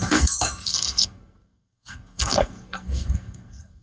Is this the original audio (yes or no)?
no